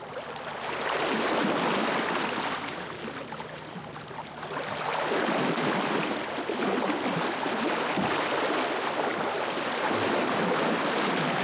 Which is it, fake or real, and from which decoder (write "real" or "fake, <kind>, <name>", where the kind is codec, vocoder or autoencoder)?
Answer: real